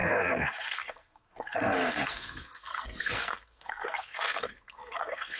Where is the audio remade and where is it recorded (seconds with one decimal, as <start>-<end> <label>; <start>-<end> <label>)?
0.0-5.4 remade